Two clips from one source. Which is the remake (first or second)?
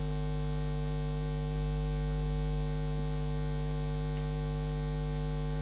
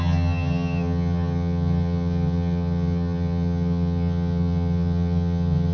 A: second